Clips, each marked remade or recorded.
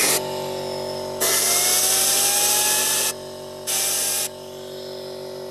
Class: recorded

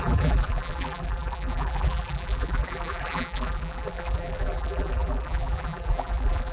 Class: remade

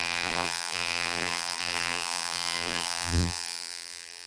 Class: remade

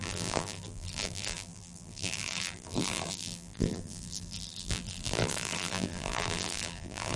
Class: remade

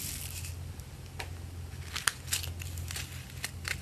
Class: recorded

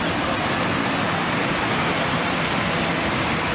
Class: recorded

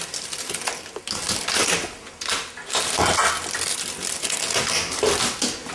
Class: recorded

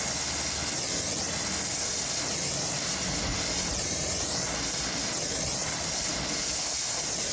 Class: recorded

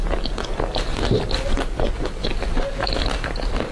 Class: recorded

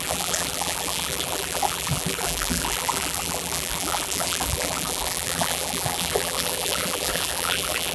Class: remade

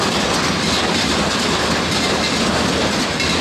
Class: recorded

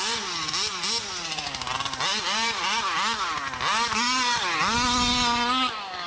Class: recorded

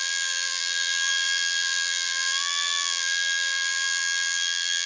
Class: remade